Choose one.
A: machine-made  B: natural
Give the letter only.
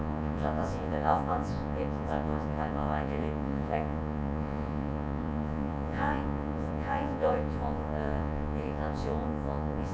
A